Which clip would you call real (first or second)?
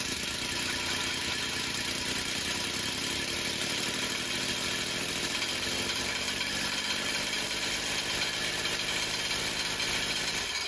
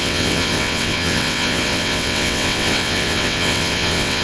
first